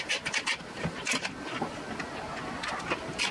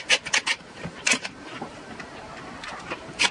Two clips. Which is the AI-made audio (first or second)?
second